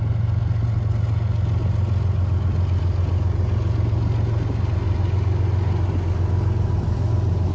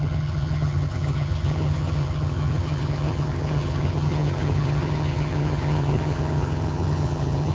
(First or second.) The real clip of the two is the first